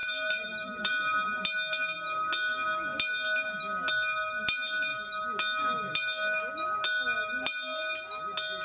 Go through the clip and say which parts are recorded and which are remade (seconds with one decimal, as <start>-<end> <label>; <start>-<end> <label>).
0.0-0.9 remade; 0.9-8.6 recorded